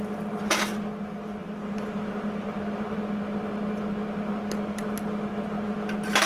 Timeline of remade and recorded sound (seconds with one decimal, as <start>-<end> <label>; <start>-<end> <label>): 0.0-1.4 recorded; 1.4-3.0 remade; 3.0-6.3 recorded